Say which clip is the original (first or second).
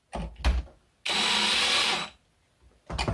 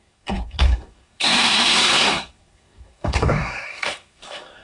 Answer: first